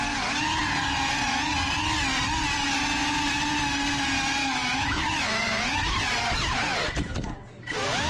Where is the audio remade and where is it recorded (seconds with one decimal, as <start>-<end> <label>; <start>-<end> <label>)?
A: 0.0-4.4 recorded; 4.4-6.0 remade; 6.0-8.1 recorded

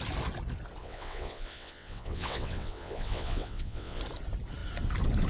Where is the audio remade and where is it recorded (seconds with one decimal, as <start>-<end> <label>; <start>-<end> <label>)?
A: 0.0-0.8 recorded; 0.8-4.0 remade; 4.0-5.3 recorded

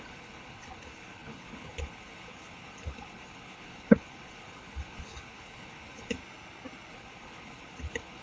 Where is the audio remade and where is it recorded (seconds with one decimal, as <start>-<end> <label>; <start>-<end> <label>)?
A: 0.0-6.2 remade; 6.2-6.9 recorded; 6.9-8.2 remade

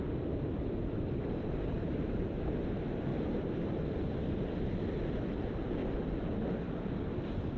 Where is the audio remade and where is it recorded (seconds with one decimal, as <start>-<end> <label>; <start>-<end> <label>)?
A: 0.0-3.1 recorded; 3.1-5.2 remade; 5.2-5.8 recorded; 5.8-7.0 remade; 7.0-7.6 recorded

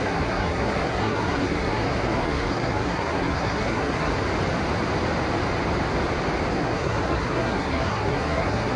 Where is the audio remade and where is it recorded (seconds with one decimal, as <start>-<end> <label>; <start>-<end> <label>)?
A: 0.0-4.1 remade; 4.1-6.5 recorded; 6.5-8.8 remade

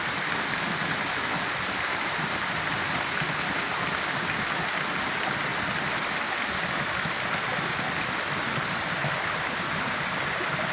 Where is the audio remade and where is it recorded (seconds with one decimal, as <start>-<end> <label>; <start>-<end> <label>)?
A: 0.0-10.7 recorded

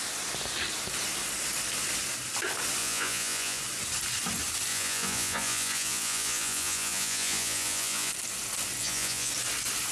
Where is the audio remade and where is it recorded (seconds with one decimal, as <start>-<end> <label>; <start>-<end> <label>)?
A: 0.0-2.8 recorded; 2.8-3.6 remade; 3.6-4.7 recorded; 4.7-8.1 remade; 8.1-8.8 recorded; 8.8-9.3 remade; 9.3-9.9 recorded